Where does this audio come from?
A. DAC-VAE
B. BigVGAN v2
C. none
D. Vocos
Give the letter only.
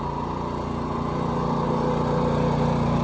C